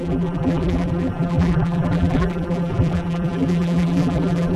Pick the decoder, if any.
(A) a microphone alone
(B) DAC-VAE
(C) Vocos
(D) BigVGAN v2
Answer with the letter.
D